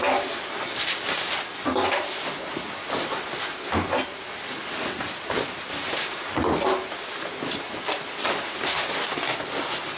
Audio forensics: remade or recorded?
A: recorded